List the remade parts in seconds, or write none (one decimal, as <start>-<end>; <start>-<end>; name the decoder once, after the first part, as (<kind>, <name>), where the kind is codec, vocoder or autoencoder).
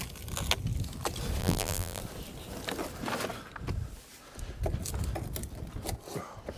1.4-2.0 (vocoder, BigVGAN v2)